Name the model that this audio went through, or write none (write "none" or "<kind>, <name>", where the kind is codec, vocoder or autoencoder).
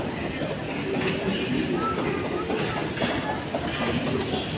none